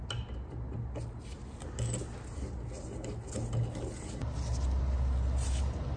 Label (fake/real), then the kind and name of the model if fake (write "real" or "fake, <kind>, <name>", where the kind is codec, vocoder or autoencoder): real